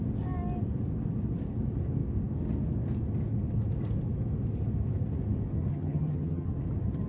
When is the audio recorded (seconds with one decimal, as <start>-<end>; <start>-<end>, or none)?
0.0-5.7; 6.5-7.1